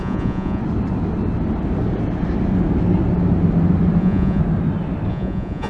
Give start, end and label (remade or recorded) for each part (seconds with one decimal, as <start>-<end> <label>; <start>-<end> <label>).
0.0-0.6 remade; 0.6-4.0 recorded; 4.0-4.4 remade; 4.4-5.1 recorded; 5.1-5.7 remade